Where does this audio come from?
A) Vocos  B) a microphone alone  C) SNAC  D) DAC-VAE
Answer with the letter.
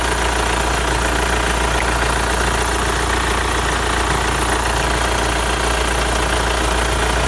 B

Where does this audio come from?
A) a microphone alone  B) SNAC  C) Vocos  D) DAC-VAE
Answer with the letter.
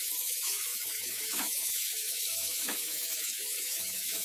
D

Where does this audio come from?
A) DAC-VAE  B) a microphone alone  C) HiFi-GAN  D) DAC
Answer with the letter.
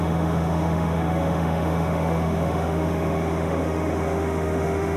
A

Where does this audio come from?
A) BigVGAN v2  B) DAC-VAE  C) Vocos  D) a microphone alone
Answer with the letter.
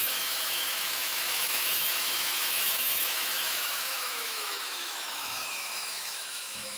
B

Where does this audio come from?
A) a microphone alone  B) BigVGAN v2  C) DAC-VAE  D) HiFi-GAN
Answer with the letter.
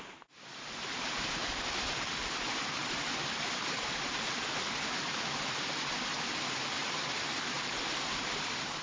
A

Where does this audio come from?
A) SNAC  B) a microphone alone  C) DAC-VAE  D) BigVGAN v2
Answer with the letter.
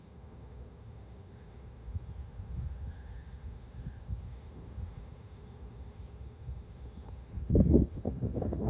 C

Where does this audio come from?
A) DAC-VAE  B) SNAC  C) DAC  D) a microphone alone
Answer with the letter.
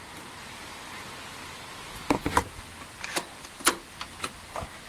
D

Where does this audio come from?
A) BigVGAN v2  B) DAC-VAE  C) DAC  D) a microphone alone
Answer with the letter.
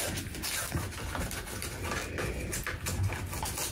D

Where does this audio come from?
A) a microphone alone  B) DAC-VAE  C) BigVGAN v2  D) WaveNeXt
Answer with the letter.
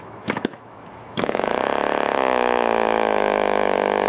B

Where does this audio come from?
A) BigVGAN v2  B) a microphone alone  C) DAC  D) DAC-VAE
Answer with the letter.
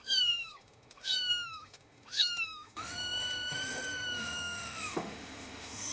D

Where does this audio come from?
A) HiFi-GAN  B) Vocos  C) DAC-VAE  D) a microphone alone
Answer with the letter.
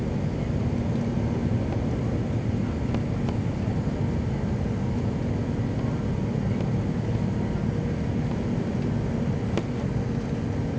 D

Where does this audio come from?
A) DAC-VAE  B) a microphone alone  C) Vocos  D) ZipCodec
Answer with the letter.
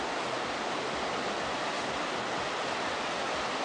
B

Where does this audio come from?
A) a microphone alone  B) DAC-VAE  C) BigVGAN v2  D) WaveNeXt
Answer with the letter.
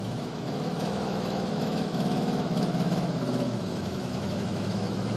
B